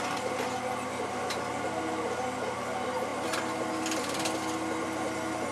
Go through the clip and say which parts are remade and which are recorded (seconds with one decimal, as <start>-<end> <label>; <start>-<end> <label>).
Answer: 0.0-5.5 recorded